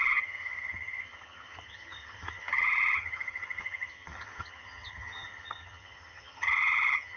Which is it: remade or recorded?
remade